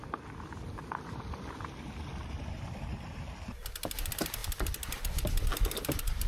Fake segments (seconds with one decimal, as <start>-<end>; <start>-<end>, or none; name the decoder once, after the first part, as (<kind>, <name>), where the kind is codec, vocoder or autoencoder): none